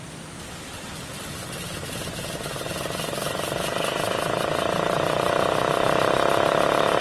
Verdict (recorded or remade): remade